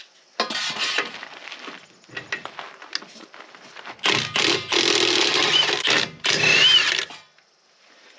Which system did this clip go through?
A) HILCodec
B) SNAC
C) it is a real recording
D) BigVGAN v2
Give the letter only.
C